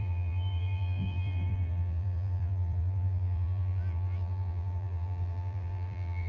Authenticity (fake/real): fake